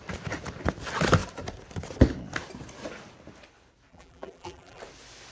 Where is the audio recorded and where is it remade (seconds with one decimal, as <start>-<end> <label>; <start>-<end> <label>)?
0.0-3.9 recorded; 3.9-4.8 remade; 4.8-5.3 recorded